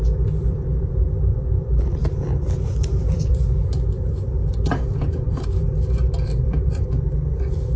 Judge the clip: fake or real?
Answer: fake